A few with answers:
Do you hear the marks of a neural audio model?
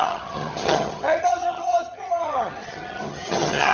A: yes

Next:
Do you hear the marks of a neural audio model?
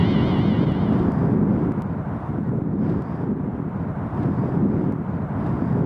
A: no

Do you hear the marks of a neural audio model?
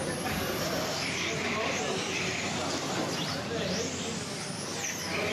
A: no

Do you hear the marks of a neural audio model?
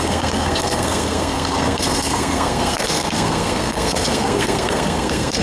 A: yes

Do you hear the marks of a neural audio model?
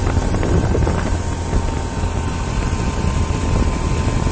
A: no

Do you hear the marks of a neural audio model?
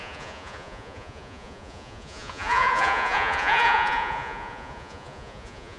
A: yes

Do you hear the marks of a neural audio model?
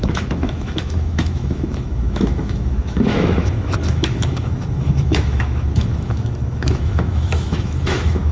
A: yes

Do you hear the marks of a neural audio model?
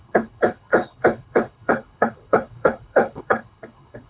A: yes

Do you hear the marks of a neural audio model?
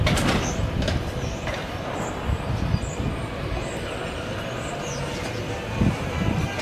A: no